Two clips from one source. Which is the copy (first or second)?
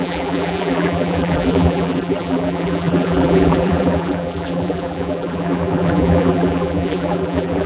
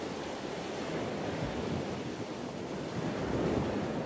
first